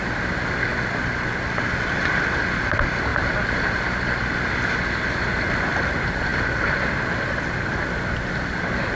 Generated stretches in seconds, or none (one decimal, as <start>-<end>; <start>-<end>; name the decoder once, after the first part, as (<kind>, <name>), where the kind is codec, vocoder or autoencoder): none